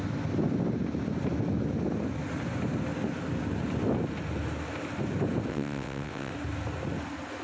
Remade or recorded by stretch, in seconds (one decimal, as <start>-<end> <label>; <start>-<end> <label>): 0.0-5.5 recorded; 5.5-6.3 remade; 6.3-7.4 recorded